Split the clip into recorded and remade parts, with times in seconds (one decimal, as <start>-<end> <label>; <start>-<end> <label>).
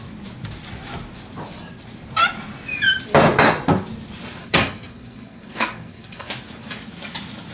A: 0.0-4.4 recorded; 4.4-6.3 remade; 6.3-7.5 recorded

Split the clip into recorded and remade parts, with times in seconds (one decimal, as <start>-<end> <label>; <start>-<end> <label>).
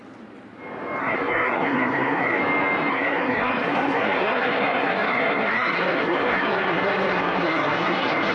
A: 0.0-1.0 recorded; 1.0-2.4 remade; 2.4-2.9 recorded; 2.9-8.3 remade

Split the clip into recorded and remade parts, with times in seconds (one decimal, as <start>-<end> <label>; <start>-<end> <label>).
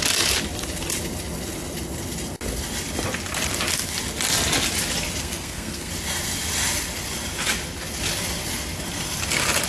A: 0.0-5.2 recorded; 5.2-5.9 remade; 5.9-9.7 recorded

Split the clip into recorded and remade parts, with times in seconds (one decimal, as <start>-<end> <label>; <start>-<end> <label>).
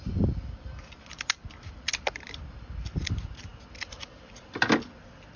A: 0.0-5.4 recorded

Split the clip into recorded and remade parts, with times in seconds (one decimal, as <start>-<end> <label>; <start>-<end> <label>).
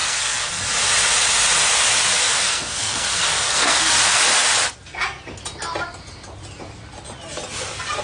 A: 0.0-0.6 remade; 0.6-2.2 recorded; 2.2-4.2 remade; 4.2-8.0 recorded